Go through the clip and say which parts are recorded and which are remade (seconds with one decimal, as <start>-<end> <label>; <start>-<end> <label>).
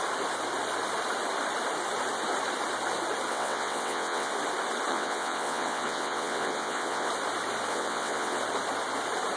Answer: 0.0-3.3 recorded; 3.3-4.3 remade; 4.3-4.9 recorded; 4.9-7.1 remade; 7.1-7.7 recorded; 7.7-8.4 remade; 8.4-9.4 recorded